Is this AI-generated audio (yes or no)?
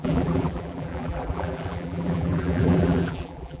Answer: yes